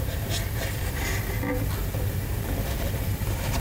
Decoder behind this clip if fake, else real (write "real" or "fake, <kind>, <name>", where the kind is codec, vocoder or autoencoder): fake, vocoder, BigVGAN v2